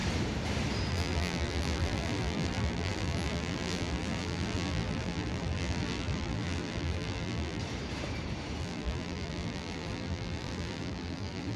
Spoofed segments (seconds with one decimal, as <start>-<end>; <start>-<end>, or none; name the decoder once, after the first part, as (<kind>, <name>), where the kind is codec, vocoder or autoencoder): 0.9-7.6 (vocoder, BigVGAN v2); 8.6-11.6